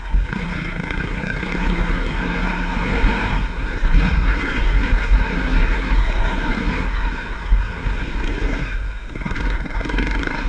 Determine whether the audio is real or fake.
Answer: fake